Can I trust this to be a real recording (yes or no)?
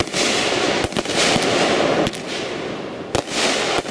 yes